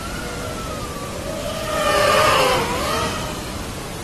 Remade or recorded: recorded